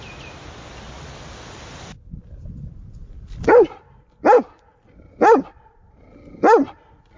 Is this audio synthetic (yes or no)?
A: no